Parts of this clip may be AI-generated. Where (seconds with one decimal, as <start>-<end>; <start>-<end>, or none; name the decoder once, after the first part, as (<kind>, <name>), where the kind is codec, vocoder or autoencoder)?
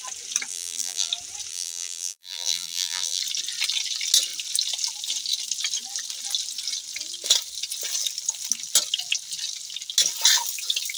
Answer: 0.5-1.1 (vocoder, BigVGAN v2); 1.5-3.2